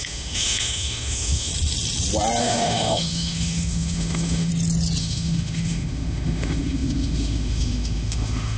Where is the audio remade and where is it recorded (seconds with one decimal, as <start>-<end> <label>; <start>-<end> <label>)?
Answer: 0.0-1.5 remade; 1.5-2.4 recorded; 2.4-4.5 remade; 4.5-5.0 recorded; 5.0-8.6 remade